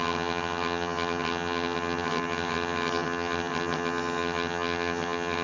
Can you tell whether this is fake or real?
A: fake